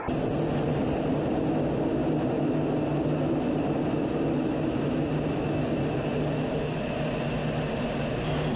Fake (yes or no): no